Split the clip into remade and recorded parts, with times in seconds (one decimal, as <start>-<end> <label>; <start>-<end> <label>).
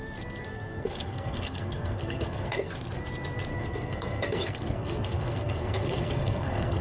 0.0-0.5 recorded; 0.5-2.7 remade; 2.7-3.5 recorded; 3.5-6.8 remade